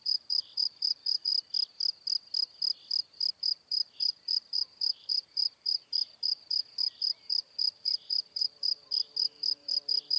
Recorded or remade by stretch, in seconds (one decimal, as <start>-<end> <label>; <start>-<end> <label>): 0.0-1.3 remade; 1.3-3.3 recorded; 3.3-10.2 remade